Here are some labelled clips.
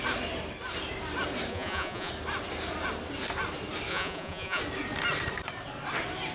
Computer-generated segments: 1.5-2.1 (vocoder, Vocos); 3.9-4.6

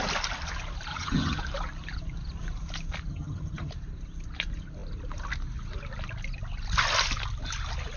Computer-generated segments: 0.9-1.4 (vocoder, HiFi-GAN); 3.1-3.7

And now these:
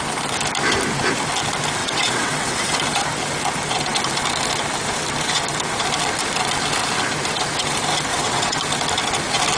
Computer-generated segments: 1.8-2.8 (vocoder, WaveNeXt); 8.1-8.6

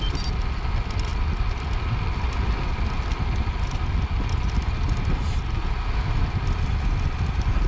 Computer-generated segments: none

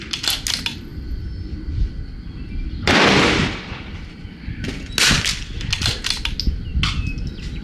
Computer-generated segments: none

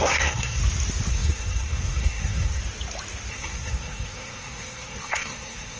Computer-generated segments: 0.0-0.6 (codec, SNAC); 1.1-2.6; 3.3-5.8

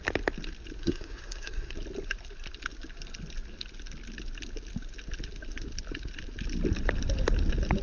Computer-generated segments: 0.8-1.7 (codec, SNAC)

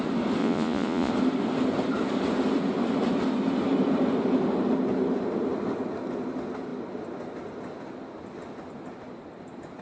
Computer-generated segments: 0.4-1.1 (vocoder, Vocos)